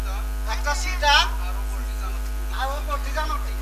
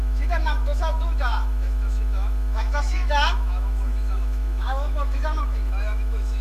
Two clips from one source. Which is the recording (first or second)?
first